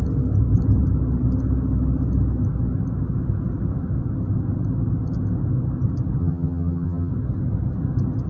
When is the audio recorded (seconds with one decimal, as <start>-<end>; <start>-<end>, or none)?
0.0-6.2; 7.1-8.3